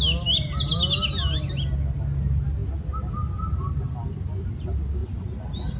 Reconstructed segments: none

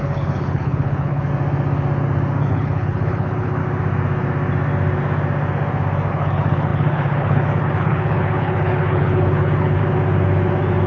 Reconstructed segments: 0.0-1.3 (codec, HILCodec); 2.4-3.6; 6.1-9.8

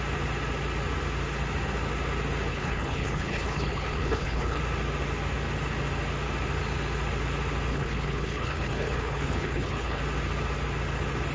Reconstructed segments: 2.5-4.6 (codec, HILCodec); 7.7-10.0

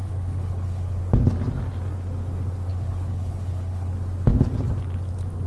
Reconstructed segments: 0.0-1.0 (codec, HILCodec); 2.7-3.9